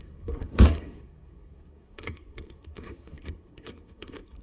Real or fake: fake